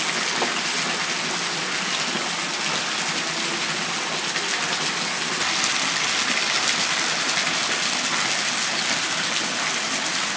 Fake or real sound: real